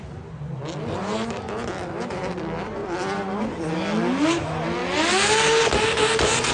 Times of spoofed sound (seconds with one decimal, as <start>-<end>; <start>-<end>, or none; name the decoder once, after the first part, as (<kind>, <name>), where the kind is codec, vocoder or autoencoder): none